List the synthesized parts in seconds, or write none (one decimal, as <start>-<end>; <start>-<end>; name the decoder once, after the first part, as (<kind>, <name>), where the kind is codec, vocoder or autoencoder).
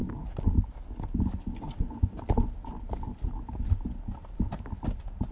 none